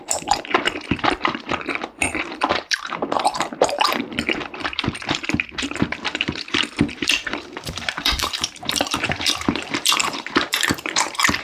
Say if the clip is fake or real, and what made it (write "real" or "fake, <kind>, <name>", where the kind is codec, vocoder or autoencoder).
fake, vocoder, BigVGAN v2